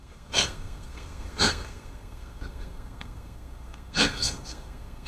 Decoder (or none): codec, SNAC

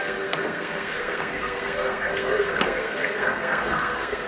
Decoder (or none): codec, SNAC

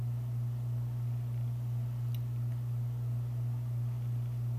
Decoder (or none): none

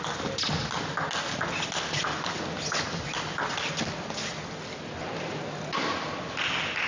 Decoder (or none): none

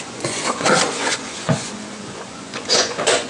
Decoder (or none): vocoder, Vocos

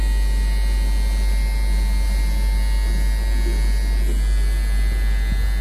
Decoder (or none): none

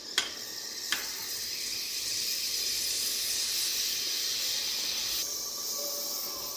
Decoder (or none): none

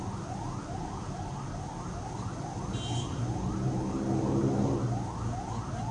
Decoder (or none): none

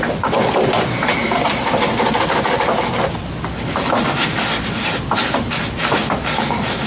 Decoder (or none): none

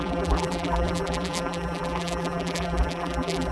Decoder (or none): vocoder, BigVGAN v2